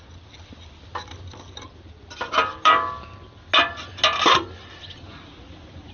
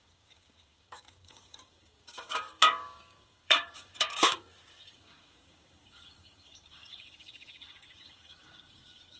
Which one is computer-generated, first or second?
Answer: second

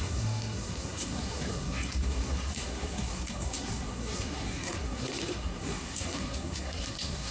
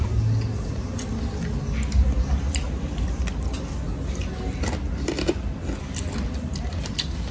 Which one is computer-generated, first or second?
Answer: first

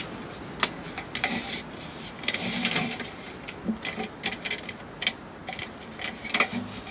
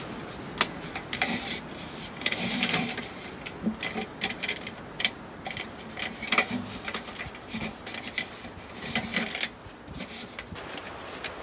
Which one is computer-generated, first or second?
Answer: second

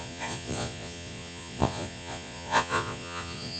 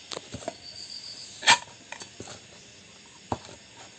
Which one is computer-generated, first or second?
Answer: first